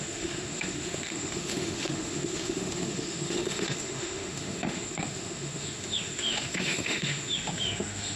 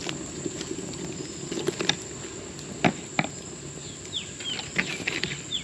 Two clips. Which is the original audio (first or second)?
second